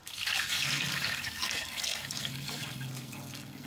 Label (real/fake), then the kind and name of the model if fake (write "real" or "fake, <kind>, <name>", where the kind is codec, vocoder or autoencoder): fake, codec, SNAC